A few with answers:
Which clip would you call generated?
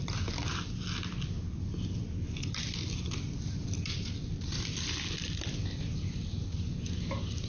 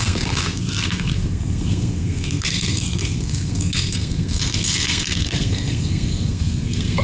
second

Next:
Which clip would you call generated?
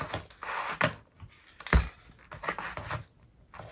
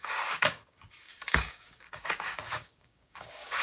second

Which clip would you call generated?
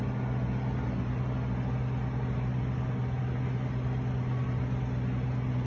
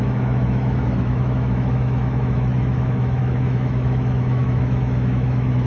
second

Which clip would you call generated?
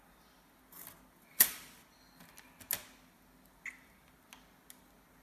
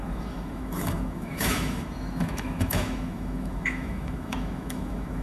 second